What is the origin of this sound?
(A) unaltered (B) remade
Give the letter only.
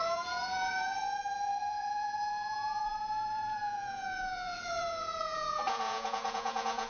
B